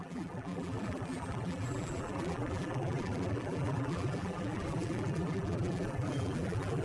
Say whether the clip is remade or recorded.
remade